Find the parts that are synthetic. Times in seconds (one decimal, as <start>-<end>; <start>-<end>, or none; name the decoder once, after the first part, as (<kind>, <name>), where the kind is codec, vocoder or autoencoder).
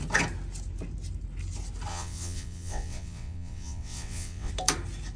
1.9-4.5 (vocoder, WaveNeXt)